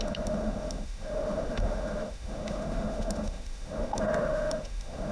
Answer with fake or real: fake